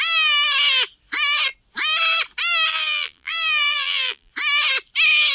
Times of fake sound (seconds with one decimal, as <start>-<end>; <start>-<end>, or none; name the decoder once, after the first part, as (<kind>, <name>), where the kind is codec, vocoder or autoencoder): 2.7-4.3 (vocoder, BigVGAN v2)